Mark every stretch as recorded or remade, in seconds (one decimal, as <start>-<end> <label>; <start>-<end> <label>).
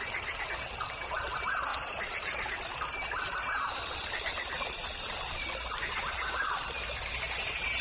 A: 0.0-1.7 recorded; 1.7-6.1 remade; 6.1-7.8 recorded